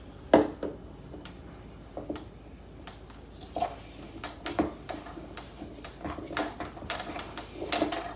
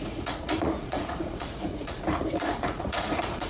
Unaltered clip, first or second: first